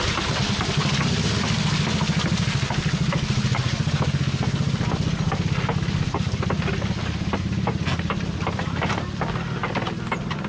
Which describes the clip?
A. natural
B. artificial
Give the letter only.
A